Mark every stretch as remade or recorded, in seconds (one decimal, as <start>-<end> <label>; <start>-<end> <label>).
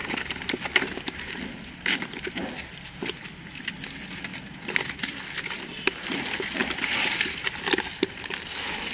0.0-4.3 recorded; 4.3-4.8 remade; 4.8-6.6 recorded; 6.6-7.2 remade; 7.2-8.9 recorded